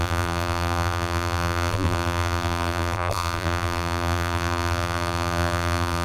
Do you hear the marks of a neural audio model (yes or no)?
yes